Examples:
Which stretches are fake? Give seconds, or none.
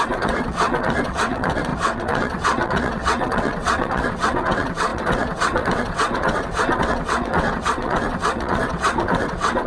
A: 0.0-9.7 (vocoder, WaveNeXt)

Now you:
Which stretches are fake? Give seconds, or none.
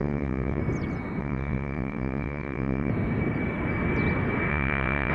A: 0.0-0.6 (vocoder, WaveNeXt); 1.2-2.9; 4.5-5.1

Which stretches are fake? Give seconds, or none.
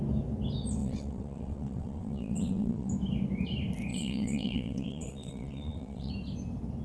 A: 0.8-2.9 (vocoder, WaveNeXt); 3.9-6.1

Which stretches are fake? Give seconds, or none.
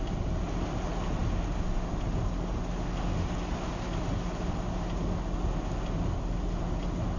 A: none